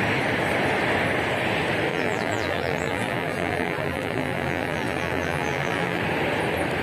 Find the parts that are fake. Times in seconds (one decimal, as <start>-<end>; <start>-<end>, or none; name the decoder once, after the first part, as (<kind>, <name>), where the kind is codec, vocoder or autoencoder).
1.9-6.0 (vocoder, BigVGAN v2)